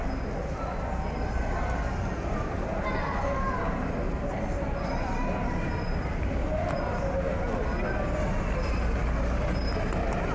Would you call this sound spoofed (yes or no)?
no